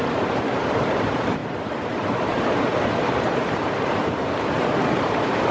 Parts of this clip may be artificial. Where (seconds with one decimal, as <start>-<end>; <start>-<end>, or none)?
0.0-5.5